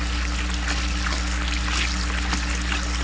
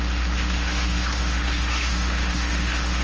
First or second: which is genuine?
first